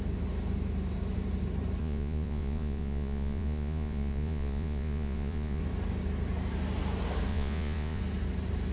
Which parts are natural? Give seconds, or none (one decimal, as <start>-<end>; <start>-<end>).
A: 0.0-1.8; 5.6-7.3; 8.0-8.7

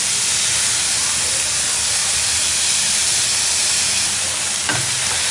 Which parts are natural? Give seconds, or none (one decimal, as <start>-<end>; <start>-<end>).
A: 0.0-5.3

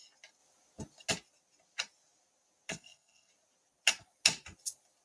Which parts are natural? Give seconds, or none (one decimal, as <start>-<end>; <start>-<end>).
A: 0.0-2.7; 3.3-5.0

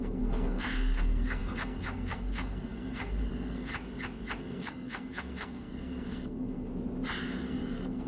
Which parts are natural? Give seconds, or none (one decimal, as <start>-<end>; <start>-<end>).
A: 3.7-4.4; 6.7-7.2

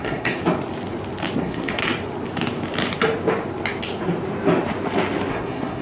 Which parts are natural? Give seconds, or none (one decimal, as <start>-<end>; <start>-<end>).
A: 0.4-1.4; 1.8-5.3